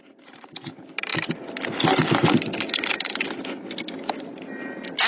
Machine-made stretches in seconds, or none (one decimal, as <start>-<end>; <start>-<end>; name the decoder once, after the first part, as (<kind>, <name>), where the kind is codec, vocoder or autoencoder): none

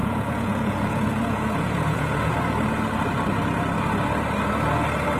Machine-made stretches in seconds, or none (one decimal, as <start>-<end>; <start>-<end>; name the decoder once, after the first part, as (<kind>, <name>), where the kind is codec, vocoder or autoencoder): 0.0-2.3 (vocoder, Vocos)

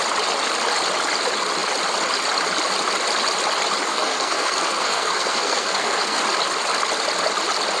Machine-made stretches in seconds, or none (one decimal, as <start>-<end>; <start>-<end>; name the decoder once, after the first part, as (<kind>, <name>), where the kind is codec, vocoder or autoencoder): 3.9-6.2 (codec, SNAC)

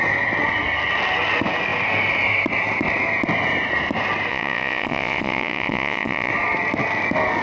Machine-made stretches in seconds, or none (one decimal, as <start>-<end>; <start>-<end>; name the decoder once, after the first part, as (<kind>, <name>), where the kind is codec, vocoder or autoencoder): 4.3-6.3 (vocoder, Vocos)